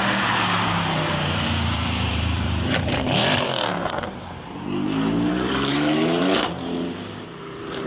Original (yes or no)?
no